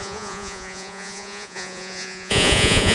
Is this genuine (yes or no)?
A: no